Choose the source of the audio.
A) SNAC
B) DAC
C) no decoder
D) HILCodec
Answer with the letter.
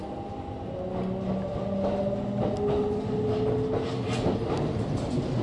C